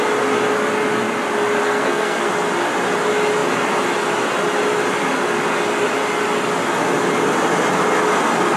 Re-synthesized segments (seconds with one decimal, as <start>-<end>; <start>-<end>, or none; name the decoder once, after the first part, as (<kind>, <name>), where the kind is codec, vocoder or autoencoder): 1.6-2.3 (codec, SNAC)